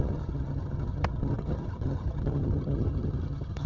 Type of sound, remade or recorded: remade